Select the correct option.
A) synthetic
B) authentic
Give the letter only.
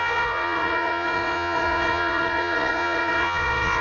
A